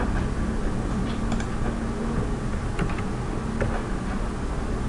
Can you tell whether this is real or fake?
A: real